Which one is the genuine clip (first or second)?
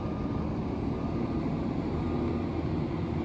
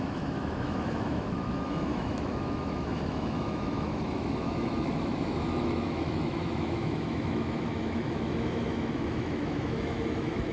first